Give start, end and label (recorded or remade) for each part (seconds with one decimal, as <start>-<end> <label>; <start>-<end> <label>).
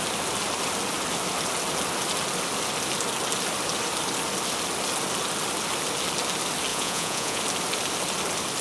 0.0-6.7 recorded; 6.7-7.4 remade; 7.4-8.6 recorded